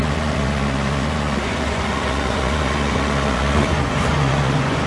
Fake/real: fake